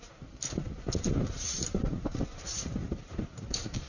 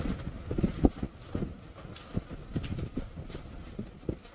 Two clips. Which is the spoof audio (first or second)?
first